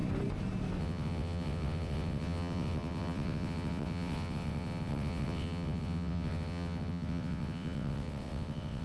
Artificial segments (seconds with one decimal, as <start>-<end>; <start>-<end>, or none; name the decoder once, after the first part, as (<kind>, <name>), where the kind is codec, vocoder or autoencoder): 0.8-8.8 (vocoder, WaveNeXt)

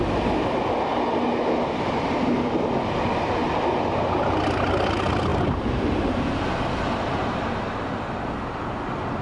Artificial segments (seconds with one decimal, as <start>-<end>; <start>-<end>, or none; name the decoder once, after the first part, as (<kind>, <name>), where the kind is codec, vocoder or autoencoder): 5.3-6.6 (vocoder, BigVGAN v2); 7.2-7.8

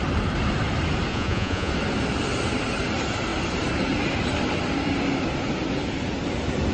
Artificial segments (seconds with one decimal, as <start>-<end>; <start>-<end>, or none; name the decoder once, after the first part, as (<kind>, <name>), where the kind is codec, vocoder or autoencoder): 1.1-1.7 (vocoder, Vocos)